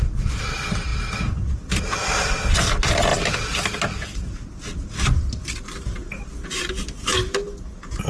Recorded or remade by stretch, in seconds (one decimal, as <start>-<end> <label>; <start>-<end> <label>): 0.0-8.1 recorded